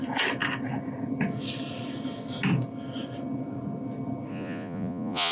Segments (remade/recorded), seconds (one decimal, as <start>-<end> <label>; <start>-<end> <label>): 0.0-4.3 recorded; 4.3-5.3 remade